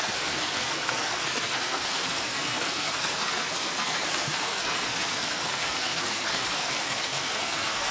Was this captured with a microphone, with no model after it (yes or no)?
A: no